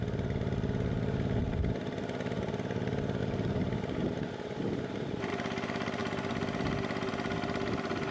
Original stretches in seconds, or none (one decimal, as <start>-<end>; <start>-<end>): 0.0-3.2; 5.3-8.1